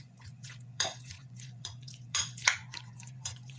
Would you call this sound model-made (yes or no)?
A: yes